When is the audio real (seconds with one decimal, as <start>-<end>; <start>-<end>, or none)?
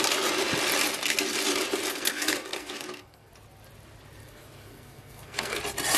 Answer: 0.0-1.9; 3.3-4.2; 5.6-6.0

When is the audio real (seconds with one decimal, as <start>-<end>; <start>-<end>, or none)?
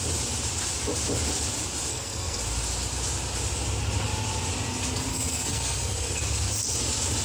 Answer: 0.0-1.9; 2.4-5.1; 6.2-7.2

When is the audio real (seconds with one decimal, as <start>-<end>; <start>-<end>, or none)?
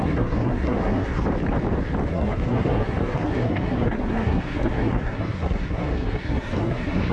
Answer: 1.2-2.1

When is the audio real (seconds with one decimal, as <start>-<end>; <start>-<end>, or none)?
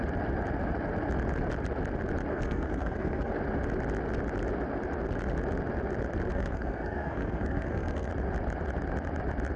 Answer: 0.0-2.3; 3.3-6.3; 8.1-9.6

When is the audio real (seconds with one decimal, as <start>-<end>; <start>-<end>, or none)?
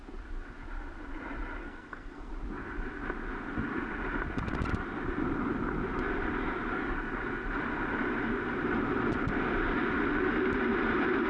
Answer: 0.0-1.6; 2.3-11.3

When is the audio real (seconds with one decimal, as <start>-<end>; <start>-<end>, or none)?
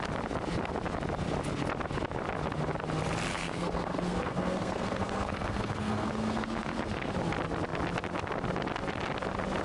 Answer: 0.0-3.3; 7.1-9.6